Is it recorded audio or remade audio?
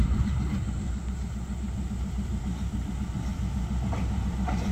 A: recorded